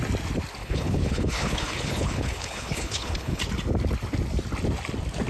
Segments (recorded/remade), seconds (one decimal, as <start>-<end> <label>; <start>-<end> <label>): 0.0-0.6 recorded; 0.6-3.4 remade; 3.4-5.3 recorded